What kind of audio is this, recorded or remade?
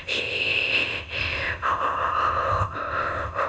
remade